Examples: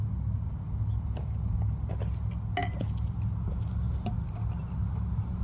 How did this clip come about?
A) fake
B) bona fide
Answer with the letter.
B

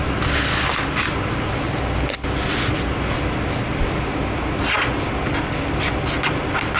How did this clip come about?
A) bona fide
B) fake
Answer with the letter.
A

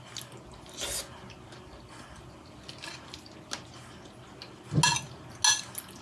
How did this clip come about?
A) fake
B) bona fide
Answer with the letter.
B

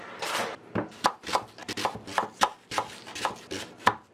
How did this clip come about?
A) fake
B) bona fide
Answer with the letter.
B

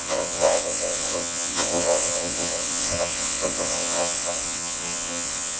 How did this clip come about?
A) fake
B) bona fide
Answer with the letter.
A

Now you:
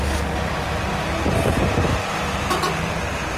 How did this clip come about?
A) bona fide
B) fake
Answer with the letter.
A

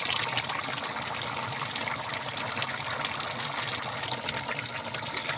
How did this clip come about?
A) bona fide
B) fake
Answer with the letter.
A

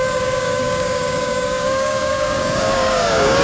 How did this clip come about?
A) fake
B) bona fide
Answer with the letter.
A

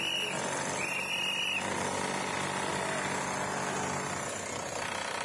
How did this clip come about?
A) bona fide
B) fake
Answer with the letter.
A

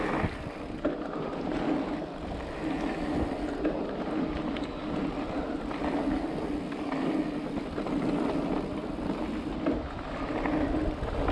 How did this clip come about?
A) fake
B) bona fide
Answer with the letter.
B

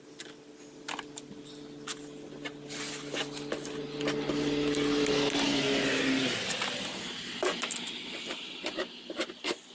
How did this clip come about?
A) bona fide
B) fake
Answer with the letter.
A